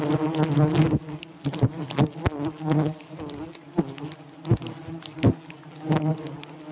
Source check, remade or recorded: recorded